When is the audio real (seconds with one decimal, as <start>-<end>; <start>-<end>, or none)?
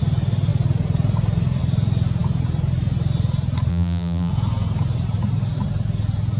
0.0-3.7; 4.3-6.4